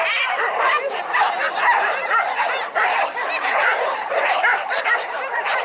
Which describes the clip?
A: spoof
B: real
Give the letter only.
A